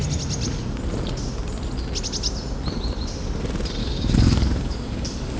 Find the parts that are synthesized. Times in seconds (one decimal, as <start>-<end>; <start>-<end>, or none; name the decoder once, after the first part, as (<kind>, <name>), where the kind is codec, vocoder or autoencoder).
3.8-5.4 (codec, DAC)